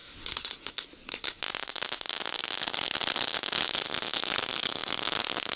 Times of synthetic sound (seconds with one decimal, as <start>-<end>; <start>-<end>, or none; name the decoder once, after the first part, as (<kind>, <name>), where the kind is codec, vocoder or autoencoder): 0.0-1.4 (codec, SNAC)